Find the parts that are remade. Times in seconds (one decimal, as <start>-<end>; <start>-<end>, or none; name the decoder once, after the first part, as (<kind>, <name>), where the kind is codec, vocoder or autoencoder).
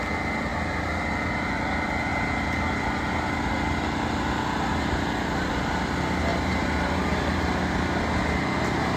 6.3-7.6 (vocoder, BigVGAN v2)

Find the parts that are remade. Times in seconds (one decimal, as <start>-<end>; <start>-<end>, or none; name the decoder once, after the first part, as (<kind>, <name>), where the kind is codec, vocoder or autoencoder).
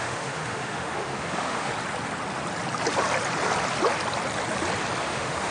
0.0-1.7 (autoencoder, DAC-VAE); 5.0-5.5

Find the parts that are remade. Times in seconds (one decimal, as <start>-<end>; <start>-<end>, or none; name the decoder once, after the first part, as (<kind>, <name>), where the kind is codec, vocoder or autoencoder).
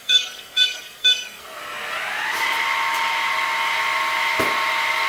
0.0-1.6 (codec, SNAC)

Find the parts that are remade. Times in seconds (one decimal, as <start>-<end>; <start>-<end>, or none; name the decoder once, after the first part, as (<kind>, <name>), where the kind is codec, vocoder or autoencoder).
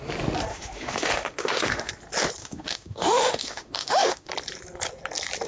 0.5-1.9 (autoencoder, DAC-VAE); 2.4-4.3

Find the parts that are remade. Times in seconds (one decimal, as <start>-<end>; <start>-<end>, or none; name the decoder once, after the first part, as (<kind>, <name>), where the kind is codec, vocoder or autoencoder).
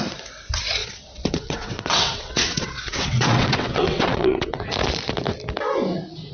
0.8-4.6 (vocoder, WaveNeXt)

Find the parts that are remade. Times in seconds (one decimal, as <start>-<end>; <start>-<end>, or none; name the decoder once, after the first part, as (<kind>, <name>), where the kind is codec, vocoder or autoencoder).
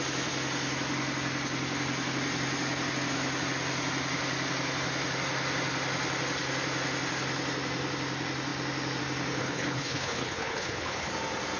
9.4-11.1 (codec, HILCodec)